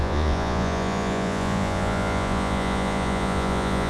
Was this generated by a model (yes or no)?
yes